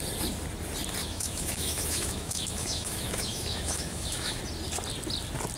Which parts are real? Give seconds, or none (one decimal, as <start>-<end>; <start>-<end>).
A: 0.0-1.0; 4.4-5.6

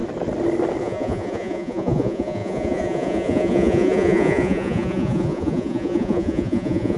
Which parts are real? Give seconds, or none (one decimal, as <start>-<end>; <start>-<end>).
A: 0.0-0.8